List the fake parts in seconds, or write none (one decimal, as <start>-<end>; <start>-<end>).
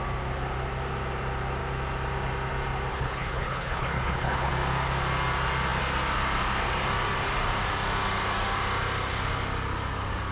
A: 2.9-4.5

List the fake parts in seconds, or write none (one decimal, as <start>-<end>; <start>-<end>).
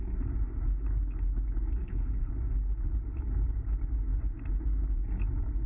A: 1.8-2.3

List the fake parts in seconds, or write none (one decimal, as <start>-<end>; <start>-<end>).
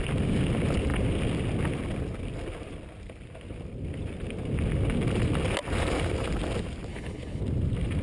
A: 6.9-7.4